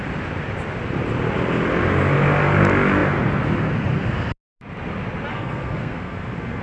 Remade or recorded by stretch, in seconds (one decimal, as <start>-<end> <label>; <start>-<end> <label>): 0.0-5.3 recorded; 5.3-6.6 remade